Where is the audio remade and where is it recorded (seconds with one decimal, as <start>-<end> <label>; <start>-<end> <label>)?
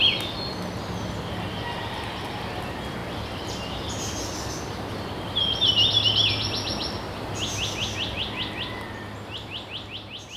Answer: 0.0-10.4 recorded